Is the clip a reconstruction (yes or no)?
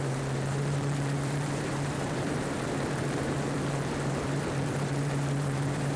yes